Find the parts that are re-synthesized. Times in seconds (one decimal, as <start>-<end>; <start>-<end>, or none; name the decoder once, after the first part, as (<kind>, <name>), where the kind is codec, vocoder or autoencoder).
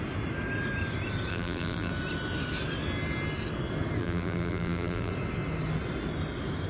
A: 1.3-1.9 (vocoder, BigVGAN v2); 4.0-5.1